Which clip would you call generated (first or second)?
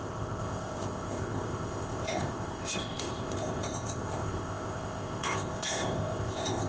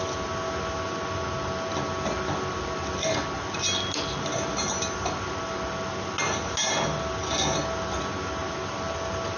first